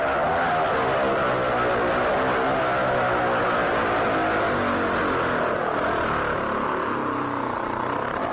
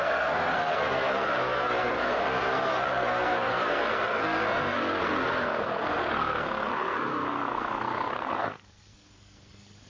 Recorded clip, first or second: first